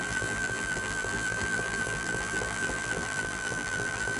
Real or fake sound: fake